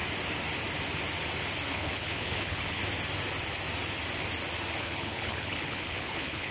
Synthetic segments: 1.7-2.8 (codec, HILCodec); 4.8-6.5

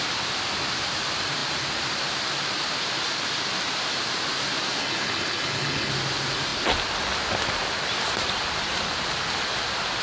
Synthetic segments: 4.8-5.9 (codec, HILCodec)

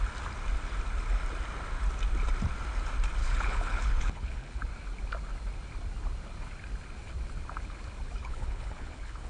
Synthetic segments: 3.2-4.6 (codec, HILCodec); 8.2-9.3

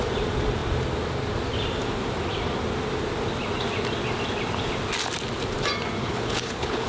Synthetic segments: 6.0-6.9 (codec, HILCodec)

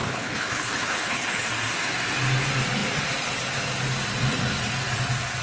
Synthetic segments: 0.0-1.5 (codec, HILCodec)

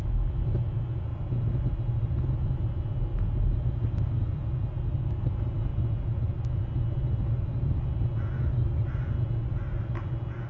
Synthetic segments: none

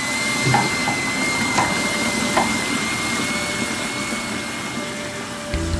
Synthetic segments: none

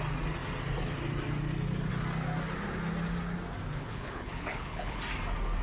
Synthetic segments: 3.7-5.0 (codec, HILCodec)